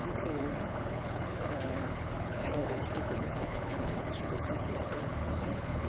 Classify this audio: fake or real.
fake